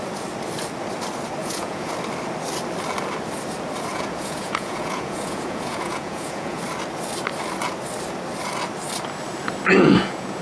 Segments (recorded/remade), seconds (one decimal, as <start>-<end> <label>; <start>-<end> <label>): 0.0-1.4 recorded; 1.4-1.9 remade; 1.9-3.9 recorded; 3.9-6.6 remade; 6.6-9.7 recorded; 9.7-10.4 remade